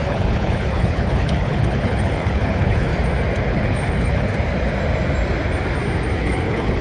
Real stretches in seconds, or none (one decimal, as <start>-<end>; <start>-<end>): 2.9-3.5; 4.3-6.2